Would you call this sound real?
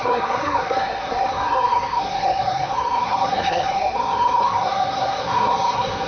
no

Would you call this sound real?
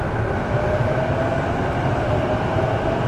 yes